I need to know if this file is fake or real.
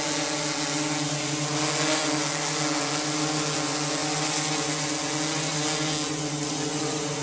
real